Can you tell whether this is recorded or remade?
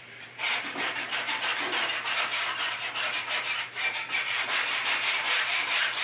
remade